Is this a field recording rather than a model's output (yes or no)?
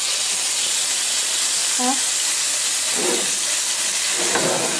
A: yes